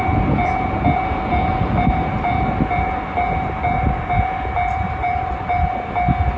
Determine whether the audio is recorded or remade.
recorded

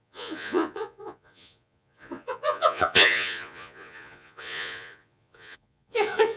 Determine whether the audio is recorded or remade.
remade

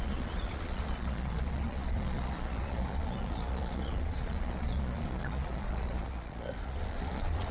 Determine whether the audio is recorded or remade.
remade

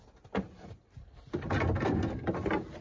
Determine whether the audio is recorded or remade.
recorded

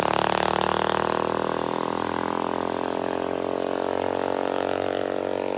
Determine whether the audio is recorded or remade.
recorded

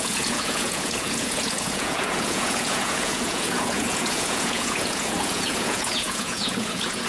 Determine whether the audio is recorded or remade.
remade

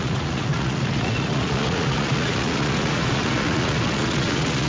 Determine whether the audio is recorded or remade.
remade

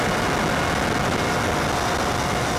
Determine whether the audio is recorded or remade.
recorded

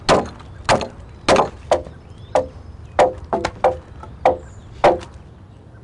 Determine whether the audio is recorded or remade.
recorded